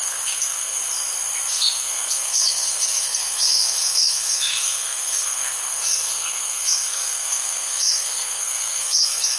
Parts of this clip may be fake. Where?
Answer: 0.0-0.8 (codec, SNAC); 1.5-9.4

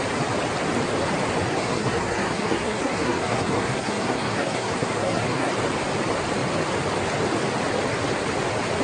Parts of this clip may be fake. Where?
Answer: 1.5-5.5 (codec, SNAC)

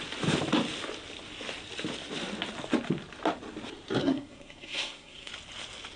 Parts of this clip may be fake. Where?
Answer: 4.0-5.3 (codec, SNAC)

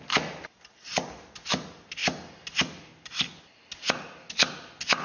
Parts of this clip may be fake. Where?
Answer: none

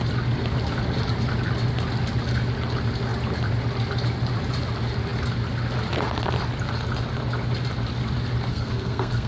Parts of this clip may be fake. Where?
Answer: 8.5-9.3 (codec, SNAC)